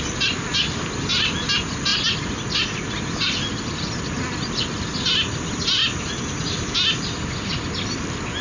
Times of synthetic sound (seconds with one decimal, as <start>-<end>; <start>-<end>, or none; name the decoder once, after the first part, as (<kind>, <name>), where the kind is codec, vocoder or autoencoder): none